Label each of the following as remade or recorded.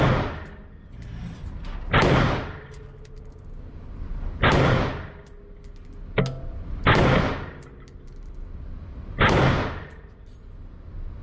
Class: recorded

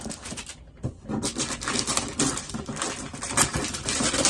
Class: recorded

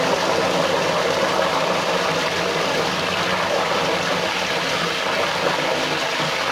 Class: recorded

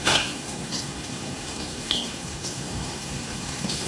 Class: remade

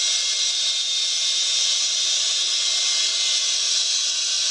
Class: recorded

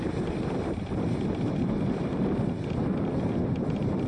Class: recorded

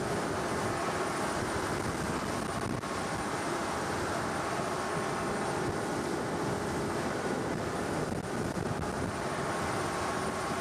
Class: recorded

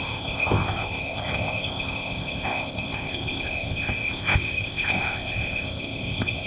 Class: remade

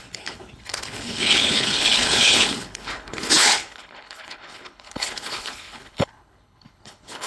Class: remade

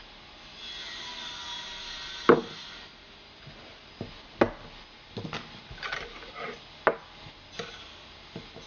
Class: recorded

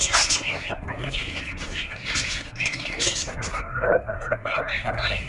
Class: remade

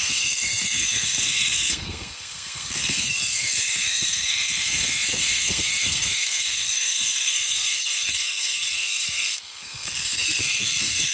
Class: remade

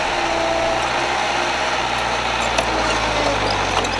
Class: recorded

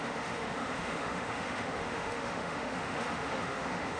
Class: remade